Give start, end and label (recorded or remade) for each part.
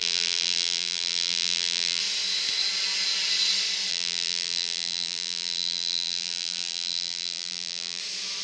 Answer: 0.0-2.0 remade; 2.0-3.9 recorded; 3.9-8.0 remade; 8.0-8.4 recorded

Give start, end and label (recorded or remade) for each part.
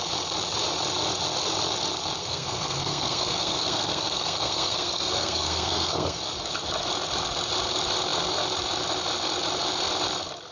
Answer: 0.0-2.2 recorded; 2.2-6.2 remade; 6.2-10.5 recorded